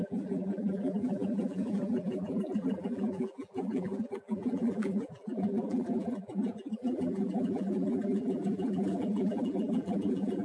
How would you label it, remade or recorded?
remade